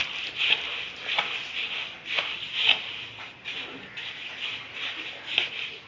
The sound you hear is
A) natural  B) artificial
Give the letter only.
A